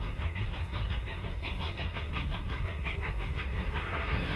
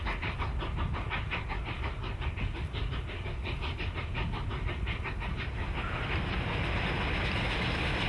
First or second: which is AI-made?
first